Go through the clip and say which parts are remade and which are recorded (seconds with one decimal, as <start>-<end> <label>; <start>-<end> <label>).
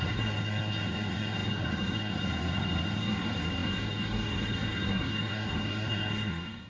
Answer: 0.0-6.7 remade